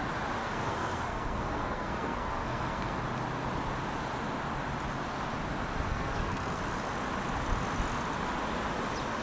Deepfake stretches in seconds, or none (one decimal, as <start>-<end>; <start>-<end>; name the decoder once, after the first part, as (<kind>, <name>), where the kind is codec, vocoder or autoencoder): 0.4-3.0 (codec, SNAC); 5.9-6.6